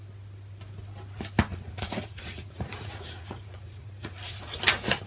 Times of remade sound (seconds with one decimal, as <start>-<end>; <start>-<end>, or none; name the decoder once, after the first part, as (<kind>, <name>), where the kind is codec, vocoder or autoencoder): 1.5-4.6 (vocoder, Vocos)